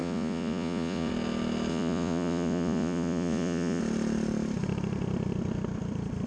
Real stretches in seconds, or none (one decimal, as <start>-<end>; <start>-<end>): 1.1-1.7; 3.8-6.3

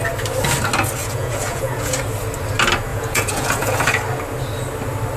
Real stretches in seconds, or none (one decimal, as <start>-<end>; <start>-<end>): 0.0-1.0; 1.9-2.9; 4.0-5.2

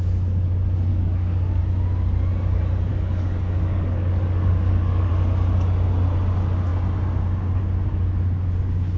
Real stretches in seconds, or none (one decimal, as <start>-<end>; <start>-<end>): 0.0-0.9; 1.6-2.9; 5.1-9.0

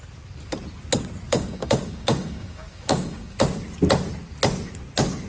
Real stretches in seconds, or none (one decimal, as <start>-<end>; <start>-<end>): 0.0-1.3; 3.4-5.3

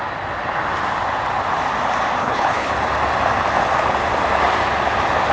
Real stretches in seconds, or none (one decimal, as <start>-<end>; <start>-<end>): 0.0-2.2; 2.7-5.3

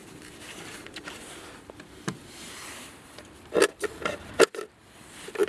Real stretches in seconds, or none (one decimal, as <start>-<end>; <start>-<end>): 3.3-5.5